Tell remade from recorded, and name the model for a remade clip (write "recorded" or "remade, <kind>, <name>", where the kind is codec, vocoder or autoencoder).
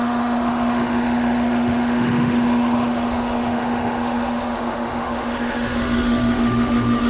remade, autoencoder, DAC-VAE